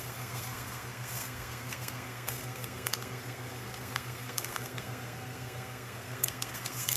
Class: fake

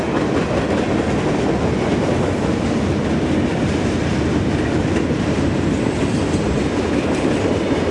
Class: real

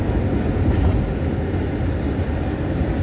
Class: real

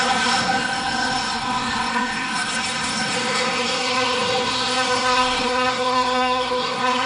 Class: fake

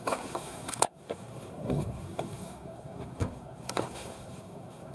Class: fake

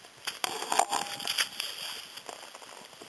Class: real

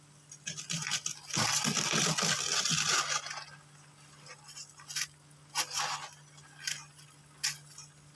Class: real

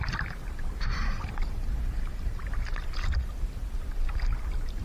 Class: real